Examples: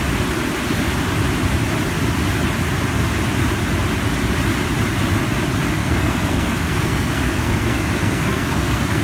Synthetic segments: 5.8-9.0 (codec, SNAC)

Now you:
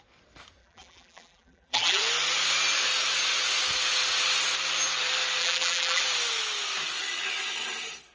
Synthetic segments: 0.6-2.0 (vocoder, BigVGAN v2); 5.4-6.0

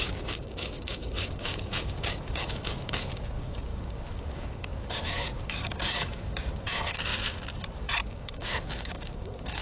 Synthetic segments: 0.0-7.1 (codec, DAC); 8.1-9.6

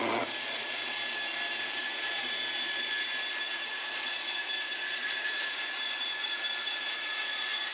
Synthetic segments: 0.0-0.8 (vocoder, Vocos); 1.6-2.4; 3.3-7.7